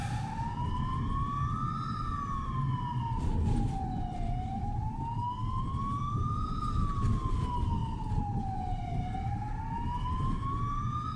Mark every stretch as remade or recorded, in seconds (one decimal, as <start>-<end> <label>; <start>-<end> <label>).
0.0-11.2 recorded